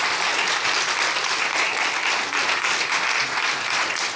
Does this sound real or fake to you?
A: real